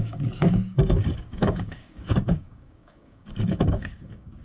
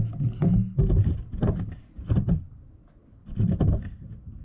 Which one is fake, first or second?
first